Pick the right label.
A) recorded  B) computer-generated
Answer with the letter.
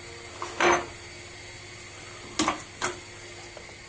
A